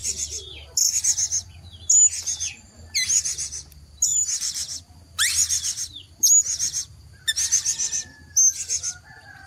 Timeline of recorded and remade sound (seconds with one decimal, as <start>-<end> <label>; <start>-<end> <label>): 0.0-9.5 recorded

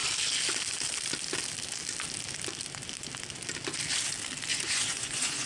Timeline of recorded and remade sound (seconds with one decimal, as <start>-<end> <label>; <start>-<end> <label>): 0.0-4.5 recorded; 4.5-5.5 remade

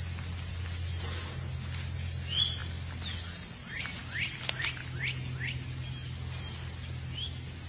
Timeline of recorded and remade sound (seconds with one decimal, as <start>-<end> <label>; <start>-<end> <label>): 0.0-7.7 recorded

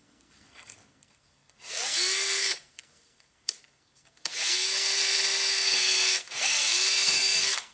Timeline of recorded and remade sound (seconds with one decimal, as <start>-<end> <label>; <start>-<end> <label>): 0.0-7.7 remade

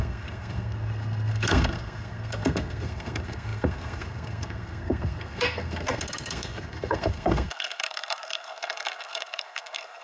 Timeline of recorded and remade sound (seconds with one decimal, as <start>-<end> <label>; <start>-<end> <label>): 0.0-10.0 remade

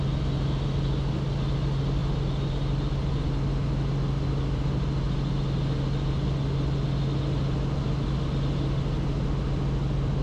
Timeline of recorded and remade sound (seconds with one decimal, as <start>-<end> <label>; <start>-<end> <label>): 0.0-10.2 recorded